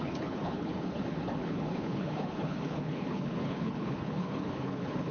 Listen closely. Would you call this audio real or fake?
fake